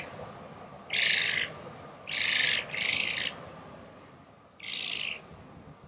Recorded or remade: recorded